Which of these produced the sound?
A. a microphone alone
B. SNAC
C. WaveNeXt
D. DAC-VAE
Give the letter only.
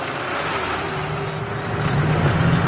A